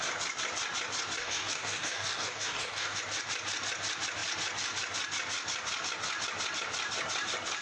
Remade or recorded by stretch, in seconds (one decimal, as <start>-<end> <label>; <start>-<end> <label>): 0.0-1.2 recorded; 1.2-3.0 remade; 3.0-7.6 recorded